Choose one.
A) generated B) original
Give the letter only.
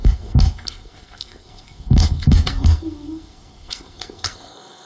A